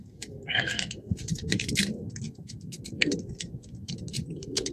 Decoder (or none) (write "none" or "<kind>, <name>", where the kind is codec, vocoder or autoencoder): codec, SNAC